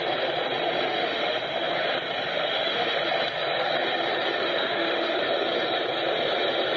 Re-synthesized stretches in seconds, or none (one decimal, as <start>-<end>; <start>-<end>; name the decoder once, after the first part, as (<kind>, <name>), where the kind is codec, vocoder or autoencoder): 0.9-1.7 (autoencoder, DAC-VAE); 2.3-3.0; 4.4-5.2